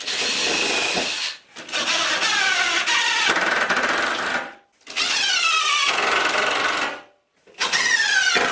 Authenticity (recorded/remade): recorded